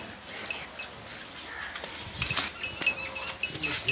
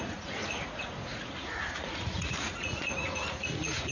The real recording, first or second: first